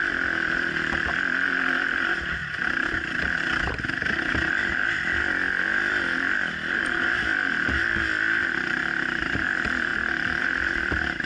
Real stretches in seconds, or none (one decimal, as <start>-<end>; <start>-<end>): 2.4-5.8